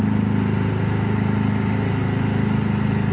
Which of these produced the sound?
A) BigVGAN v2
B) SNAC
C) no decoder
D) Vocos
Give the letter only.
C